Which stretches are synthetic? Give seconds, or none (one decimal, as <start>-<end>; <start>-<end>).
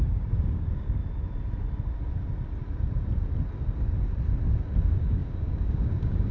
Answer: 0.0-1.0; 4.8-6.3